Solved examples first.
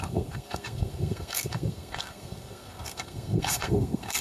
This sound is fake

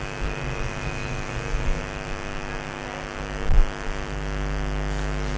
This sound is real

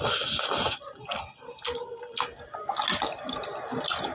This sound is real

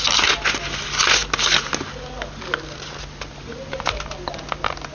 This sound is real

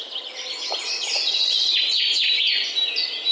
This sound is real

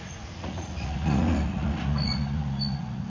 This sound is fake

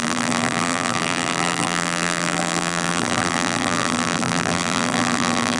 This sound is fake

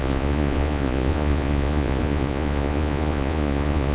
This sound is fake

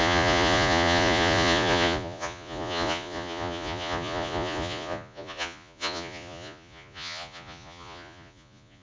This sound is fake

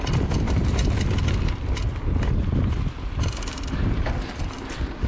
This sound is real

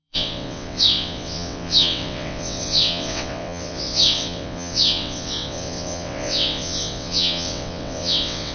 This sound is fake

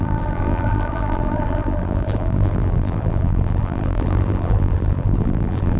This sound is fake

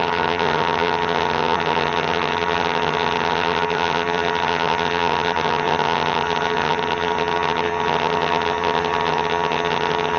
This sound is fake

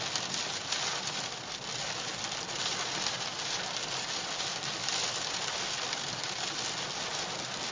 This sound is fake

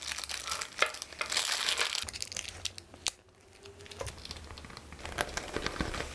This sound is real